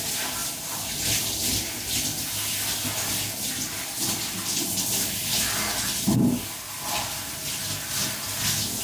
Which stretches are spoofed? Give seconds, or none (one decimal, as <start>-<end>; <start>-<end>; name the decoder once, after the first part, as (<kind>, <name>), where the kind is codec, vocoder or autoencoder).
none